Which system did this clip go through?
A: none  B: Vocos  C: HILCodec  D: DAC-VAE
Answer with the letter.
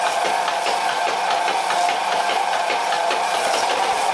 A